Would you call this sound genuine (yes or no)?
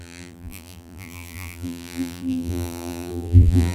no